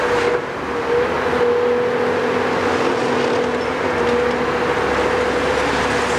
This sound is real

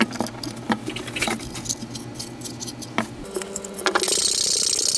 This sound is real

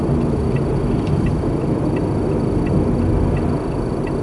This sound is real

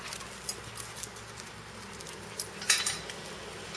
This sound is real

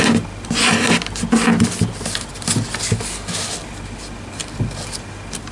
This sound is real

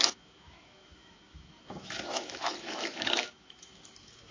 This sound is fake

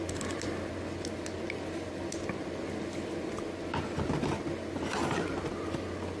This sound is real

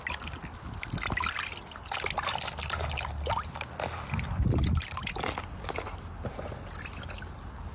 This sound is real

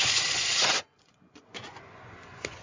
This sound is fake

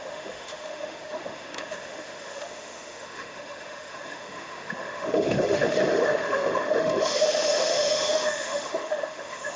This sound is fake